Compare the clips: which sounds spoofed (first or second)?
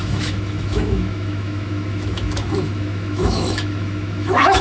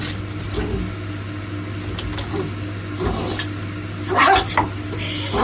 first